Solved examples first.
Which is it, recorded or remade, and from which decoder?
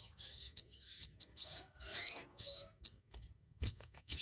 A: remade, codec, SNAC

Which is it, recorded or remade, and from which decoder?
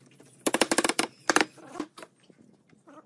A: recorded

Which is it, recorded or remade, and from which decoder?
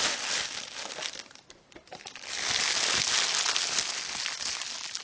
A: recorded